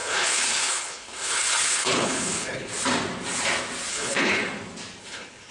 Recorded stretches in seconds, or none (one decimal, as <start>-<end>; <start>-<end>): 2.7-3.9; 4.4-5.0